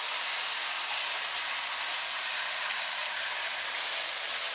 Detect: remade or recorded recorded